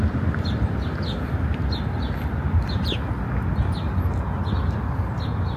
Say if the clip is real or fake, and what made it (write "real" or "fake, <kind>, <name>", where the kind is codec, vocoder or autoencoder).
real